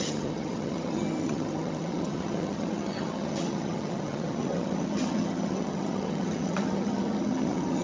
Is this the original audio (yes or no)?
no